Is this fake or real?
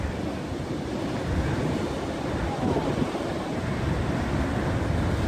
fake